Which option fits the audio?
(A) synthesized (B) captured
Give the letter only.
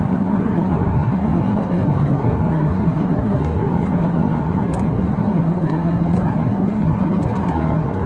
A